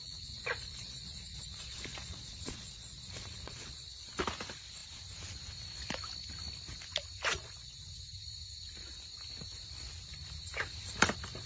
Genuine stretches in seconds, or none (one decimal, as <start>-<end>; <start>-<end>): 4.2-7.3; 7.8-11.5